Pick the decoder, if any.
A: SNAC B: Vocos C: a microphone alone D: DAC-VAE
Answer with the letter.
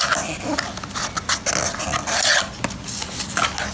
C